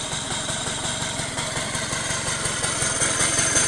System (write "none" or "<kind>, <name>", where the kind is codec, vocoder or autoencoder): none